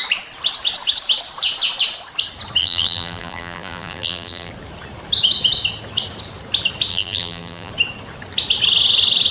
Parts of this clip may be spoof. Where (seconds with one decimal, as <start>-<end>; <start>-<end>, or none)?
2.6-4.5; 6.9-7.7